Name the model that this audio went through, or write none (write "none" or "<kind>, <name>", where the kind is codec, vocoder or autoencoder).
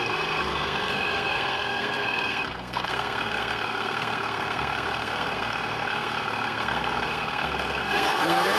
codec, SNAC